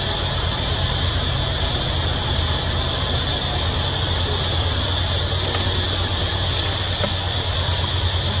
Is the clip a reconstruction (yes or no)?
no